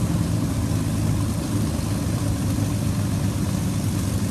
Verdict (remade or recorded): recorded